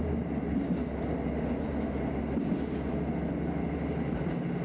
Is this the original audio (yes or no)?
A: yes